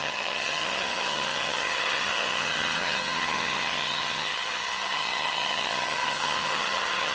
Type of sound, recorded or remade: remade